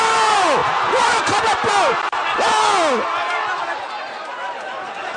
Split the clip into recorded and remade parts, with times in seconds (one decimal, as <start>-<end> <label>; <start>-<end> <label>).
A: 0.0-0.6 recorded; 0.6-1.7 remade; 1.7-5.2 recorded